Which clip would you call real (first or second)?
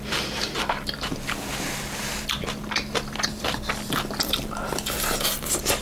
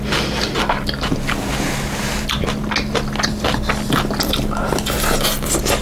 second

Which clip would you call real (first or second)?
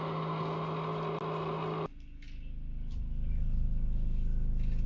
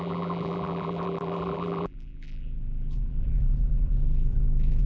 first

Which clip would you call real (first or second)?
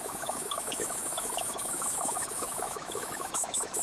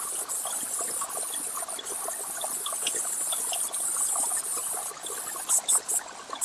second